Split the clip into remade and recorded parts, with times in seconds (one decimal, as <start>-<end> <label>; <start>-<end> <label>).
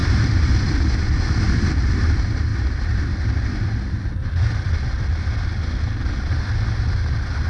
0.0-0.7 remade; 0.7-7.5 recorded